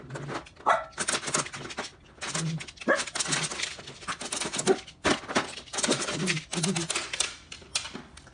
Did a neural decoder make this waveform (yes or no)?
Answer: no